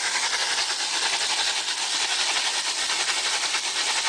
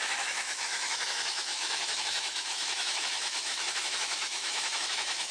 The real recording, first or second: first